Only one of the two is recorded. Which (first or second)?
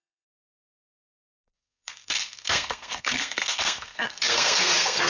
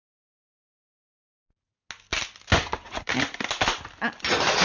second